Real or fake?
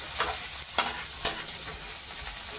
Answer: fake